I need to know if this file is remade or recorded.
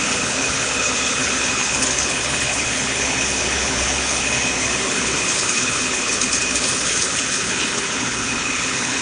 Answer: remade